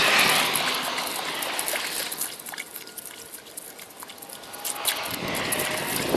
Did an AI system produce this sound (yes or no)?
no